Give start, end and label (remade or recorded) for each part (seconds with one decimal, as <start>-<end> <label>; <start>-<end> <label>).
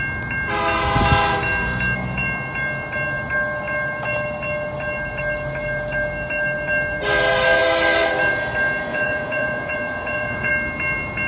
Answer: 0.0-8.9 recorded; 8.9-10.5 remade; 10.5-11.3 recorded